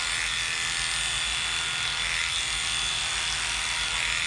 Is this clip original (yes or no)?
yes